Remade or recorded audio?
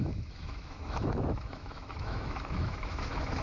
remade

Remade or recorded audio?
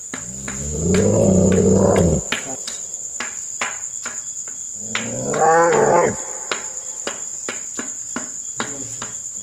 recorded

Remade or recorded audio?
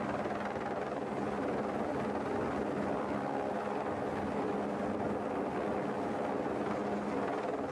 recorded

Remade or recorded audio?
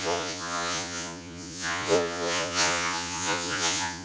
remade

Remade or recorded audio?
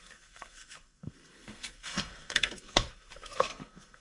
remade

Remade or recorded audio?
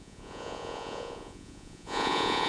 remade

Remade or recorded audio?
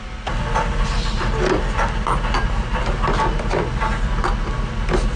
recorded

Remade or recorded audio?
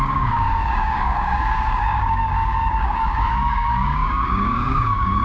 remade